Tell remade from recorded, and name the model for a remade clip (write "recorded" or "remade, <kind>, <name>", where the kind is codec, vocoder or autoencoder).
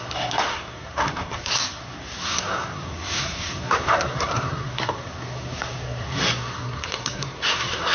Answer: remade, codec, SNAC